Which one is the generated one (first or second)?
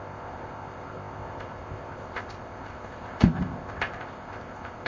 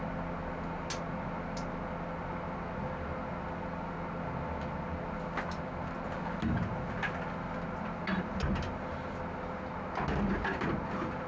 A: first